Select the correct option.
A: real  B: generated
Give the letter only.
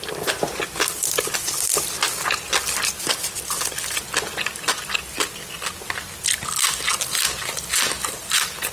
A